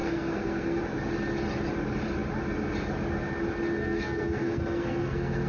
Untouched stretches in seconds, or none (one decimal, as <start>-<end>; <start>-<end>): 0.8-3.8